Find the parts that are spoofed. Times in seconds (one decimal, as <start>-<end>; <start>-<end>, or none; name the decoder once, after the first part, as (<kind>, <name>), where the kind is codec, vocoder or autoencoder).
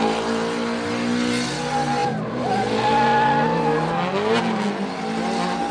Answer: none